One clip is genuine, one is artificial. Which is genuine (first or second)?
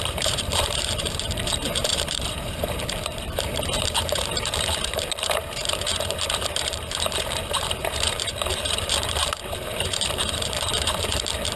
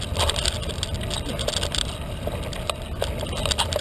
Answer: second